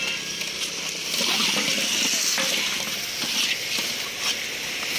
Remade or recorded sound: recorded